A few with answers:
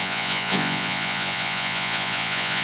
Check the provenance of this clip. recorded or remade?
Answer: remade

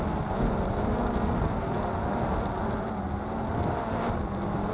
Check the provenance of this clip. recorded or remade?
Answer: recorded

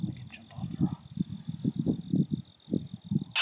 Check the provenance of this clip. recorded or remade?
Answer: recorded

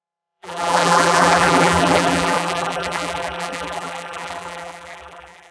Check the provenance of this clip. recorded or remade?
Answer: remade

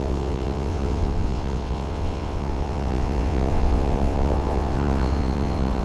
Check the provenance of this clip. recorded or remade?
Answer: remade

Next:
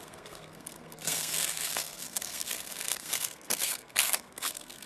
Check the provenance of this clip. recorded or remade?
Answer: remade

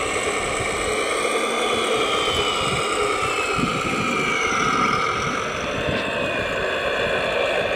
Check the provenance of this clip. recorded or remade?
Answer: recorded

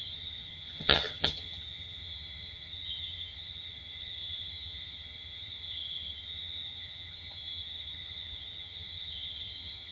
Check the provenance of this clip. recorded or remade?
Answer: remade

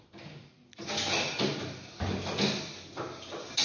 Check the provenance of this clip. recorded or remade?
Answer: recorded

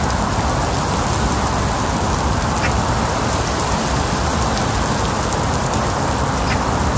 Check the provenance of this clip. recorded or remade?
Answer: recorded